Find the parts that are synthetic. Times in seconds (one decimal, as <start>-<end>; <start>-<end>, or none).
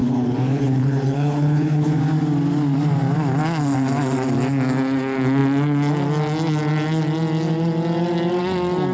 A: 0.0-2.0